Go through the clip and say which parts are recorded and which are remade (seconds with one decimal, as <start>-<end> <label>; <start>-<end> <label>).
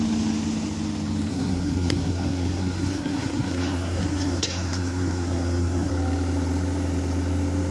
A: 0.0-1.3 recorded; 1.3-5.9 remade; 5.9-7.7 recorded